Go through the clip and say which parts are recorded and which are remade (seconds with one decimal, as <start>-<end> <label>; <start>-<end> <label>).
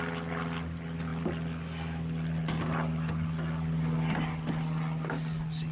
0.0-5.7 recorded